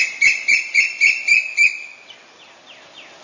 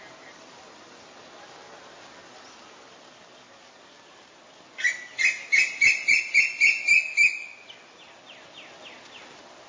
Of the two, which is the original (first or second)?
second